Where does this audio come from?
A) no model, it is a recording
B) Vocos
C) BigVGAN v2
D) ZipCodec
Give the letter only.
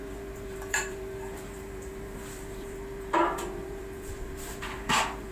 C